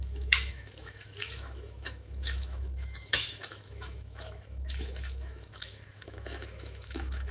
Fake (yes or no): yes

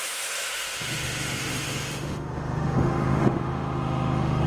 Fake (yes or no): yes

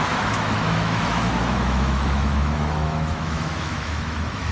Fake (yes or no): yes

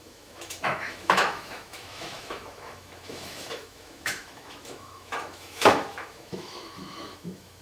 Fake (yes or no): yes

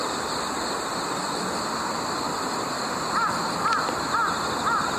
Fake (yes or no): no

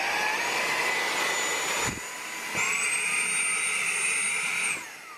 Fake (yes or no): no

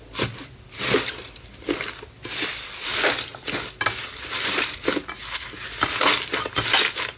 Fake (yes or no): no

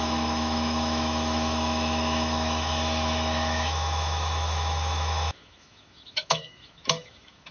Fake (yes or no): yes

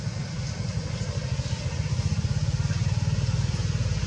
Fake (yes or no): no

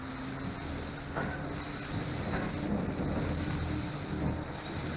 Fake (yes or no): no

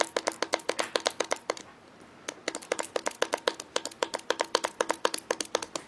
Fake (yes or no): no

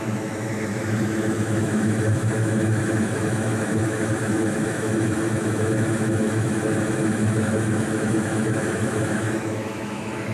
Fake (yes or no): yes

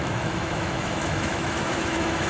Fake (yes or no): yes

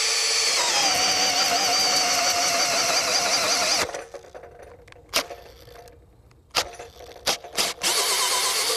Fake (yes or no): no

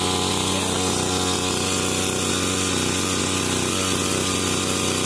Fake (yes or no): no